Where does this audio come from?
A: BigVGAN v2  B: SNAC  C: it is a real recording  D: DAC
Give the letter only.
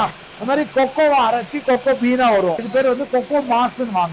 C